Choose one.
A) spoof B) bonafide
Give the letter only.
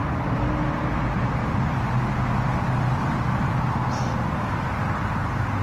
B